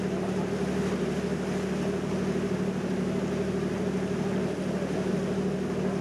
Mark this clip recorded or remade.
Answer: recorded